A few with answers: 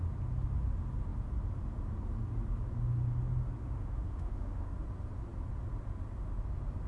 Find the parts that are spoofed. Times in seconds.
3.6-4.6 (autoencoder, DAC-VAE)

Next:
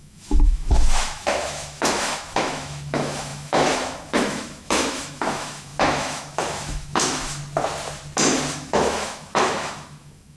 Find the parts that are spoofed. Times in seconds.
0.0-7.4 (autoencoder, DAC-VAE); 8.5-10.4

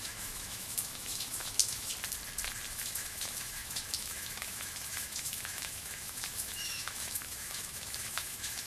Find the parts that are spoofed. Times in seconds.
0.0-1.9 (autoencoder, DAC-VAE); 2.7-8.7

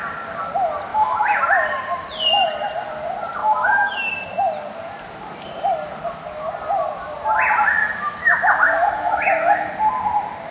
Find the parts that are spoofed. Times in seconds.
0.9-1.4 (autoencoder, DAC-VAE); 3.4-4.1; 7.8-9.7

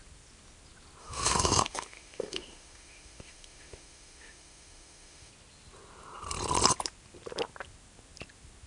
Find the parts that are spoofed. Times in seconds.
1.0-5.3 (autoencoder, DAC-VAE)

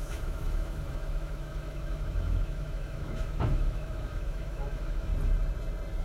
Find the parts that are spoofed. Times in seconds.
0.0-5.1 (autoencoder, DAC-VAE)

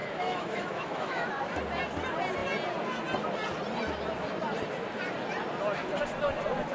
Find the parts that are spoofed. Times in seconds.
0.0-1.3 (autoencoder, DAC-VAE)

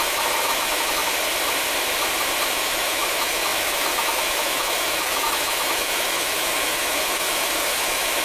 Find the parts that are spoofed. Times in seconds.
0.0-1.0 (autoencoder, DAC-VAE); 2.5-8.2